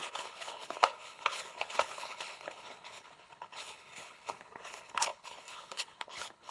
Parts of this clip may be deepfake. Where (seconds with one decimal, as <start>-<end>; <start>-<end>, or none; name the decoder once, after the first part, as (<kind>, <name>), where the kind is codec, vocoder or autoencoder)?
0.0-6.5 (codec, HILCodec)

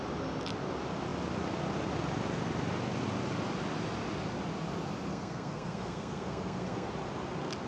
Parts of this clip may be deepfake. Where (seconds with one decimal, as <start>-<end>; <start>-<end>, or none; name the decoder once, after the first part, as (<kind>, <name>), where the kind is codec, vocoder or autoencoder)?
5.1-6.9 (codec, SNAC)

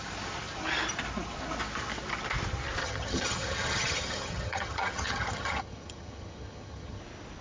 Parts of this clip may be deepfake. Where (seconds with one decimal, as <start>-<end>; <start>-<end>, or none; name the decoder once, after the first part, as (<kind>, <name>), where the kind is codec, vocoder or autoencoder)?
2.8-7.0 (vocoder, HiFi-GAN)